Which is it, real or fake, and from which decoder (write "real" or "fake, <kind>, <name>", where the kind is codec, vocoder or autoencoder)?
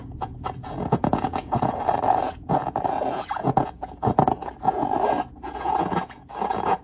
fake, vocoder, Vocos